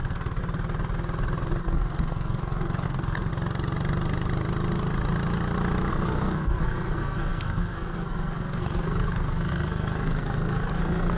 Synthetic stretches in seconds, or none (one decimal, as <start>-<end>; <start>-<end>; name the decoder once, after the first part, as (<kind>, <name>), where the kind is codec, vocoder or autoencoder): 0.0-0.4 (codec, SNAC); 1.6-3.3; 5.9-11.2